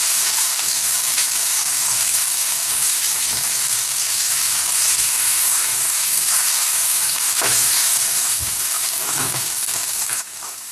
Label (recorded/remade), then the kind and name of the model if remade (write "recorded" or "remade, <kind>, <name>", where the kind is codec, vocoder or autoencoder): remade, codec, DAC